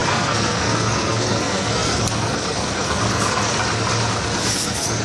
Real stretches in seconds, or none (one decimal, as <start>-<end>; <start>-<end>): 3.4-4.5